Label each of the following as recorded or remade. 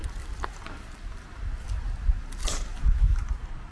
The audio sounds recorded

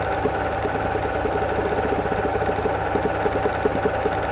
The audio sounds recorded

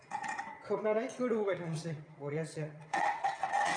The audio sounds remade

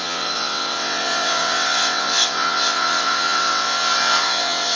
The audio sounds remade